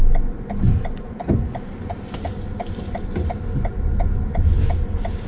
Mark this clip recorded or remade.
recorded